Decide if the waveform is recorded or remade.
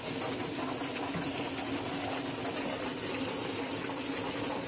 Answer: recorded